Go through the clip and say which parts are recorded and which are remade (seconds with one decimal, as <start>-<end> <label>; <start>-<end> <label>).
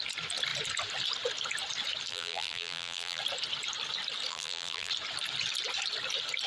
0.0-2.1 recorded; 2.1-3.2 remade; 3.2-4.3 recorded; 4.3-4.9 remade; 4.9-6.5 recorded